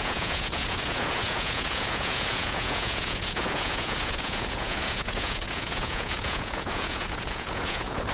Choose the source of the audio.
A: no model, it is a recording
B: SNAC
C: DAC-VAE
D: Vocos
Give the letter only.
D